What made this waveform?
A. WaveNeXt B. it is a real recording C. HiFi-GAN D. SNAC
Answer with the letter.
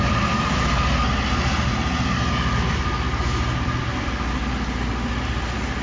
B